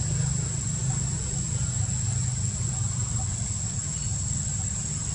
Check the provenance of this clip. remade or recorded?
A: recorded